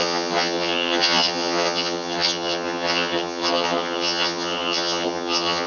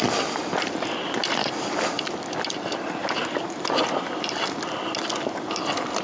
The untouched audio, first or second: second